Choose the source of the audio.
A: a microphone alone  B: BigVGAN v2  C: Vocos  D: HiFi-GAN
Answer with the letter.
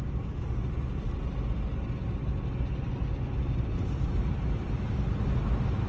A